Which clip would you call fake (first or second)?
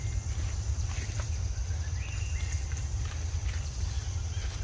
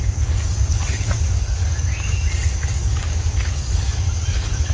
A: second